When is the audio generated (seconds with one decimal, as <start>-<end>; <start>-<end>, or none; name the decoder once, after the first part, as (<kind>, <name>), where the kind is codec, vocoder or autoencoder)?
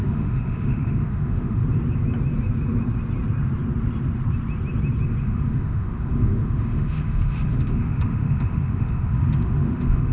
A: 0.0-1.6 (autoencoder, DAC-VAE); 5.2-10.1